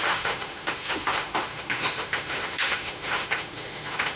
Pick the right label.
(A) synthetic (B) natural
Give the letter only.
A